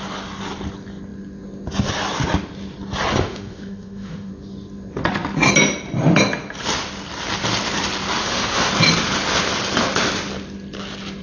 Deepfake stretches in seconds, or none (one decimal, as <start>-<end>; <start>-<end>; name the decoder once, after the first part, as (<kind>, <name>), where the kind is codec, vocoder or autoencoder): 3.1-4.3 (autoencoder, DAC-VAE); 8.2-8.7